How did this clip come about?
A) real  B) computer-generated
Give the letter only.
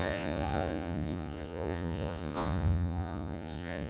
B